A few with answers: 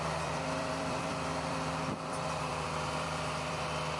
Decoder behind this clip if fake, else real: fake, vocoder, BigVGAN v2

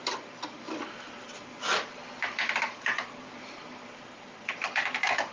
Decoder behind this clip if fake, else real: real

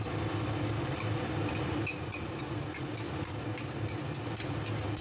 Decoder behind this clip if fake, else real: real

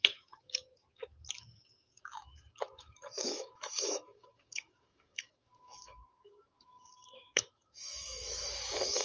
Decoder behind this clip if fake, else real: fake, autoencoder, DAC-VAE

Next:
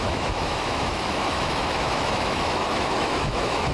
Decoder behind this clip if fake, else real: fake, autoencoder, DAC-VAE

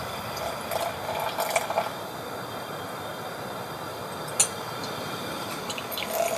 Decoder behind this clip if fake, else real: real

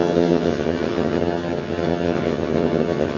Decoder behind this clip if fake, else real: fake, vocoder, HiFi-GAN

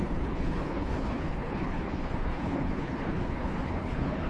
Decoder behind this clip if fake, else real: fake, codec, HILCodec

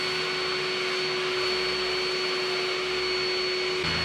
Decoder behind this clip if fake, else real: real